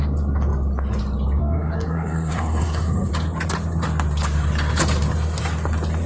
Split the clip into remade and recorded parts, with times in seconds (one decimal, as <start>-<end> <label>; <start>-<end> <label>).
0.0-1.4 recorded; 1.4-3.1 remade; 3.1-6.1 recorded